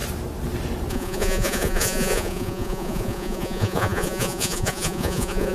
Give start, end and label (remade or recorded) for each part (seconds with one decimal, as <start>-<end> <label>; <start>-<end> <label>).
0.0-0.9 recorded; 0.9-5.5 remade